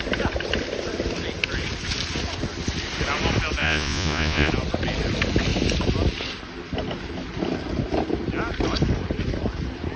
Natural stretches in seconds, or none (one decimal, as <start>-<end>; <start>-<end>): 0.0-3.6; 4.5-10.0